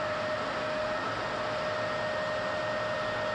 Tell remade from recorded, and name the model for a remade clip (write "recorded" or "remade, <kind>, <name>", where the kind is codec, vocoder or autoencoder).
recorded